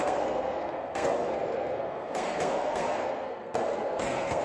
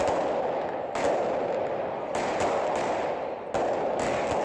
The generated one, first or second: first